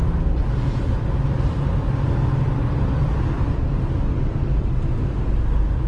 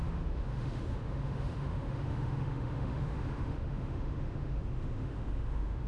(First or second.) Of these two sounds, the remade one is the second